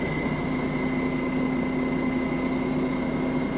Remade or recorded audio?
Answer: recorded